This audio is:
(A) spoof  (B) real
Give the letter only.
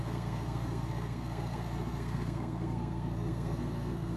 A